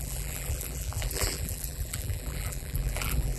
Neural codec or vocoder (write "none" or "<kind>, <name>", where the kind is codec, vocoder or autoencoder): vocoder, BigVGAN v2